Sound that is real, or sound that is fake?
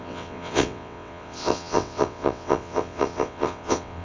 fake